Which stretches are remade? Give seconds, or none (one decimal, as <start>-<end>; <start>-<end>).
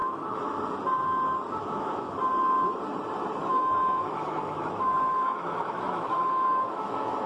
0.0-0.6; 1.6-2.2; 3.4-7.3